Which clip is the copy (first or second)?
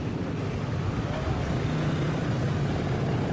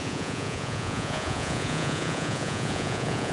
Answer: second